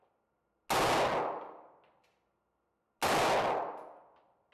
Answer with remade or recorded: recorded